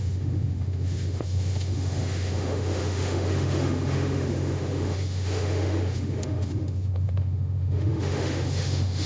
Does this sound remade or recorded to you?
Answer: remade